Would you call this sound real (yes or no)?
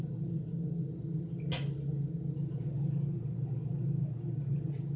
yes